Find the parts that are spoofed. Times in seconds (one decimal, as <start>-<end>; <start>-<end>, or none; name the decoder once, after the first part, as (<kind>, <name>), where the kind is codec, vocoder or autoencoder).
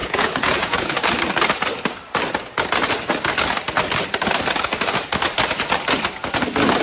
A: 0.0-0.9 (vocoder, Vocos)